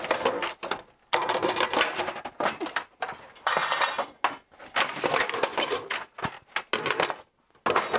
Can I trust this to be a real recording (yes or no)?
yes